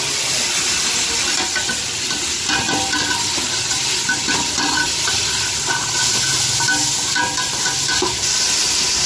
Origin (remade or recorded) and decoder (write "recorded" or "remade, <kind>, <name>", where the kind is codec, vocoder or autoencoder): recorded